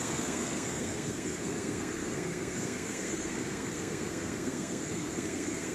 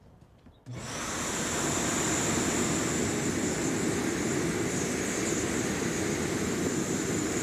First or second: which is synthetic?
first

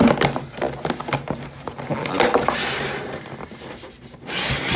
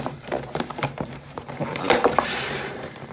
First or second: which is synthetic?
second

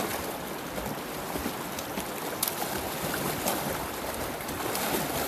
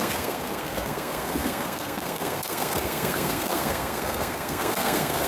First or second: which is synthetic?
second